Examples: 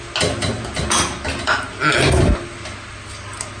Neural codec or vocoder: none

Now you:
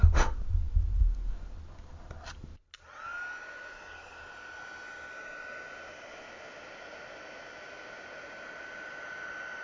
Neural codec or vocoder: none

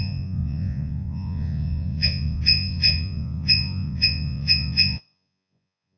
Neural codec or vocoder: vocoder, Vocos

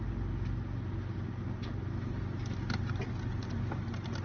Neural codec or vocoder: none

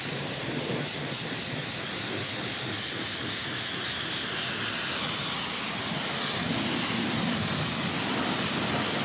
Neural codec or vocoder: none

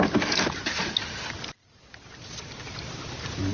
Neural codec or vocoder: none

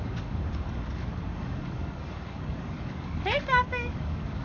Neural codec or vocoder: codec, DAC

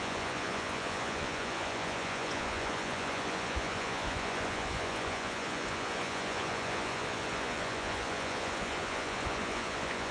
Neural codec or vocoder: vocoder, Vocos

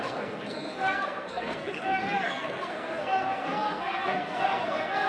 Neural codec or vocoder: codec, SNAC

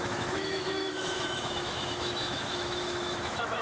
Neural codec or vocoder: autoencoder, DAC-VAE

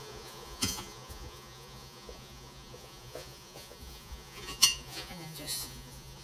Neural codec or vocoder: vocoder, Vocos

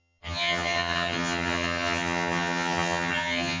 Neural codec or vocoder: vocoder, HiFi-GAN